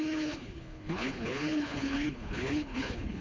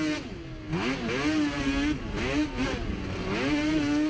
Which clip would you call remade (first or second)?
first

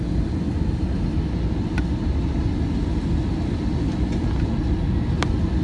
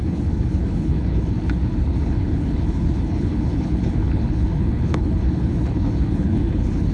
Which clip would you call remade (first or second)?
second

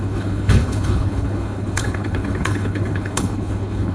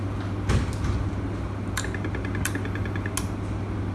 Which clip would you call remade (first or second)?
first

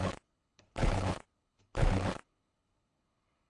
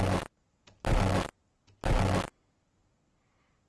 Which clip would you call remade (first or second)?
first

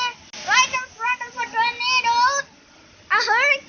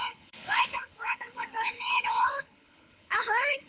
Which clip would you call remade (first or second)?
second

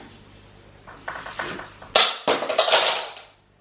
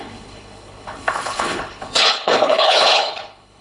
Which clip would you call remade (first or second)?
second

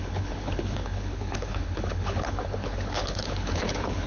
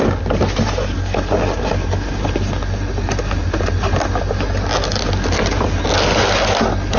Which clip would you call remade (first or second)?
first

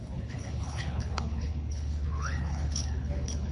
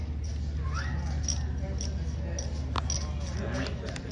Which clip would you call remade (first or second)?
first